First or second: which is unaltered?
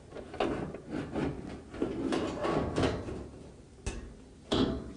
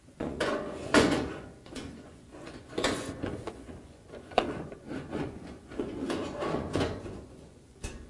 first